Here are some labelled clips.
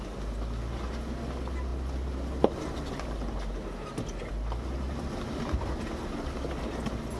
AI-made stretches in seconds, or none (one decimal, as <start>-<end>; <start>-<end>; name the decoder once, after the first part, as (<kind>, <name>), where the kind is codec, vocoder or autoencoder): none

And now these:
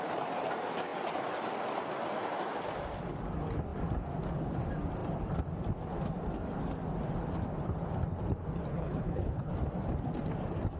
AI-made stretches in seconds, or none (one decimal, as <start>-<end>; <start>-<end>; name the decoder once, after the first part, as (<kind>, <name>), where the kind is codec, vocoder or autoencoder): 8.7-9.5 (codec, HILCodec)

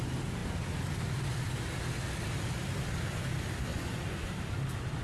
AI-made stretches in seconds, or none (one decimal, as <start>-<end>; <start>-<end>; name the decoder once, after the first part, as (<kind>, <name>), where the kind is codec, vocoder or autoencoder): 3.7-4.3 (vocoder, Vocos)